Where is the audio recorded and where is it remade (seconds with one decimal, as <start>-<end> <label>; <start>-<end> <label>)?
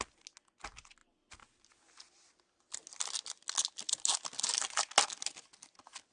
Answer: 0.0-6.1 recorded